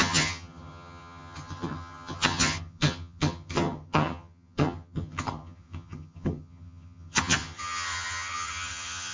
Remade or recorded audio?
remade